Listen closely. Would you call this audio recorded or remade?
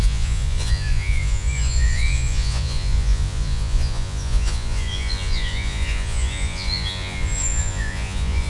remade